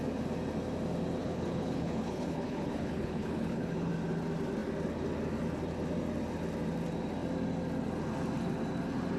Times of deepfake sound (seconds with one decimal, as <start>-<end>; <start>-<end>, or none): 1.2-3.9